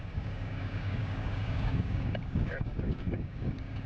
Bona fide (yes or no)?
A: no